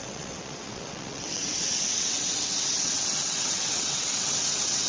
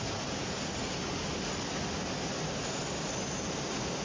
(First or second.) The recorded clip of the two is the second